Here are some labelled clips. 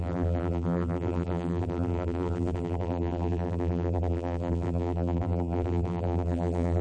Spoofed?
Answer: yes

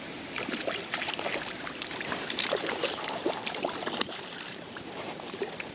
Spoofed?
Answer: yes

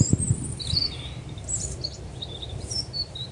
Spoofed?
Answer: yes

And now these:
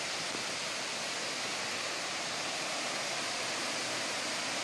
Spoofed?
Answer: no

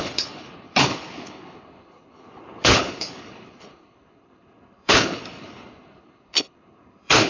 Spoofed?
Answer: yes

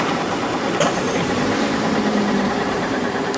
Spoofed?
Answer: yes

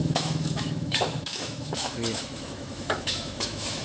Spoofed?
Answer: yes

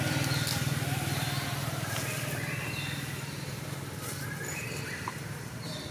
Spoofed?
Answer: no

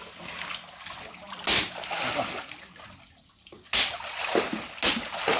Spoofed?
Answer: no